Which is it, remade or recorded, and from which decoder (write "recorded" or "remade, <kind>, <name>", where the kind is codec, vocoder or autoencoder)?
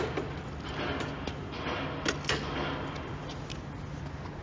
recorded